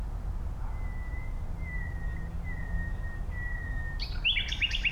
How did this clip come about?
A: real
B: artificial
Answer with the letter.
A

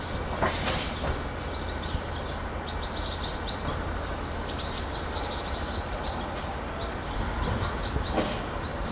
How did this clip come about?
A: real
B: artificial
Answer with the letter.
A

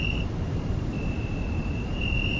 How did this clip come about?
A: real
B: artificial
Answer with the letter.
B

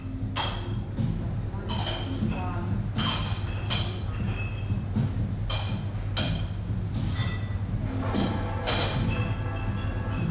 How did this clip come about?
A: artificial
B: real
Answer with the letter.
B